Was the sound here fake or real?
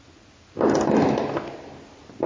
real